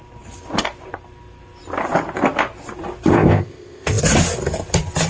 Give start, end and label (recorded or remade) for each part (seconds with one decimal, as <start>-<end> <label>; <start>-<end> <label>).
0.0-3.1 recorded; 3.1-4.0 remade; 4.0-5.1 recorded